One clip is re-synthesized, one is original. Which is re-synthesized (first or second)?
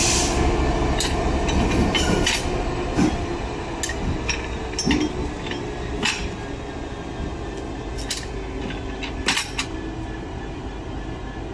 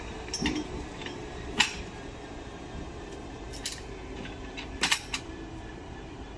second